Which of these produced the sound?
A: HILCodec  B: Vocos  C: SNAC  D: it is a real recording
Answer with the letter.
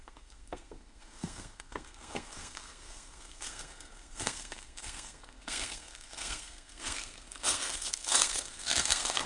C